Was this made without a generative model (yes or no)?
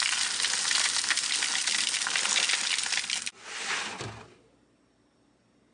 yes